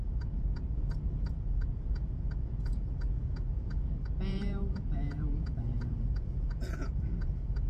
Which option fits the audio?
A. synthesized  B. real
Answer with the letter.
A